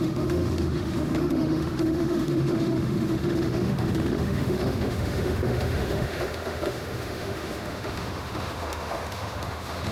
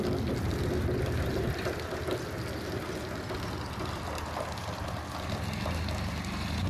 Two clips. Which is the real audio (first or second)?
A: second